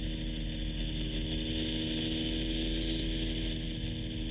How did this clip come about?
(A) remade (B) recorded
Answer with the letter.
B